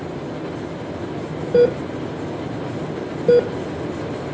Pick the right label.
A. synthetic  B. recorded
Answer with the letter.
B